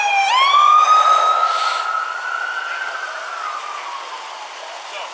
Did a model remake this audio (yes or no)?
no